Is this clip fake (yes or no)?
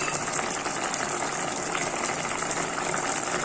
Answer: no